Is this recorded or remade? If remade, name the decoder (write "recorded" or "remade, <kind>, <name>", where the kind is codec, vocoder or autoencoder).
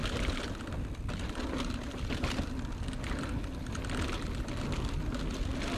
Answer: recorded